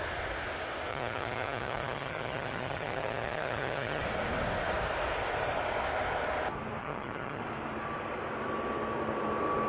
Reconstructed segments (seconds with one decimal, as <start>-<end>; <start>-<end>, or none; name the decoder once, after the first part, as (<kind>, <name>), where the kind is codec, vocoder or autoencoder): 0.9-4.0 (vocoder, HiFi-GAN); 6.8-7.4